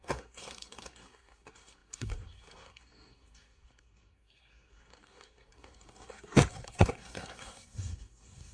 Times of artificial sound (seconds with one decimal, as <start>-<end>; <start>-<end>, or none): 0.0-8.5